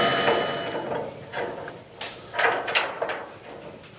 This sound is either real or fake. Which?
real